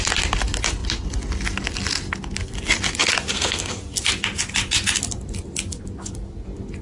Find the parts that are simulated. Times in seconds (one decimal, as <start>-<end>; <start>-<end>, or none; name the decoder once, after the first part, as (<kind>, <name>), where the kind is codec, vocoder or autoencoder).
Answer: 3.3-3.8 (codec, SNAC)